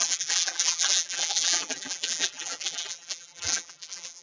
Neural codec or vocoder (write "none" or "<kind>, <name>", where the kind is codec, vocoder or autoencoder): vocoder, BigVGAN v2